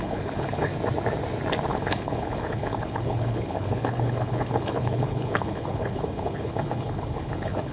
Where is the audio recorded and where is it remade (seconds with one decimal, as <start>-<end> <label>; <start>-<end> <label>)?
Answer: 0.0-0.7 remade; 0.7-1.7 recorded; 1.7-7.7 remade